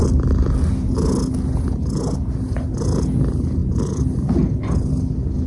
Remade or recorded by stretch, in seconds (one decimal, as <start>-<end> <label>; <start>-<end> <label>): 0.0-5.5 recorded